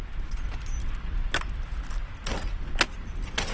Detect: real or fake real